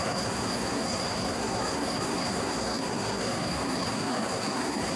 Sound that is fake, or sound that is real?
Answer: fake